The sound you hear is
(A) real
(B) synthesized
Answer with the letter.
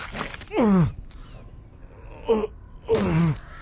A